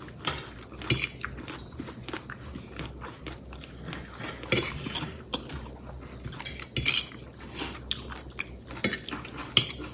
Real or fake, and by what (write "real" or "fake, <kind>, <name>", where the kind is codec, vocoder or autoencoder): real